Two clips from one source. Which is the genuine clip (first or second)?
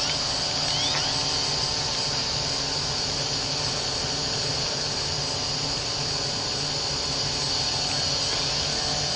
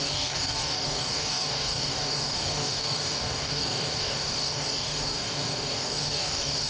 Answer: first